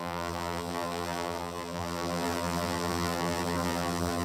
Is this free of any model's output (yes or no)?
no